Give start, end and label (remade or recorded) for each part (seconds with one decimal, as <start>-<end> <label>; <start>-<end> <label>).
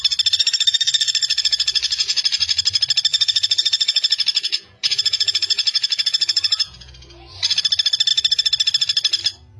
0.0-1.3 recorded; 1.3-2.2 remade; 2.2-3.1 recorded; 3.1-6.9 remade; 6.9-9.6 recorded